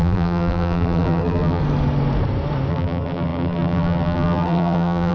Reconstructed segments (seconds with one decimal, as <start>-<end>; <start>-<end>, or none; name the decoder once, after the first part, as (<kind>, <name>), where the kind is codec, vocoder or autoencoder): 0.0-1.6 (vocoder, BigVGAN v2); 2.7-5.1